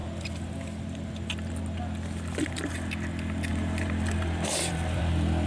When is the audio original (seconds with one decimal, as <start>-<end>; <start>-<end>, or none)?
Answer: 1.1-3.5; 5.0-5.5

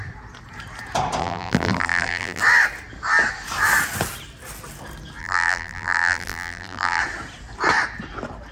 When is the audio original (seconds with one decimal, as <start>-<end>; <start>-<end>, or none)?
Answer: 0.0-1.2; 2.4-5.2; 7.0-8.5

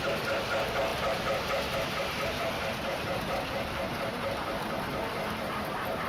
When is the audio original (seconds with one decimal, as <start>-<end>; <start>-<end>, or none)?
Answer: 0.0-6.1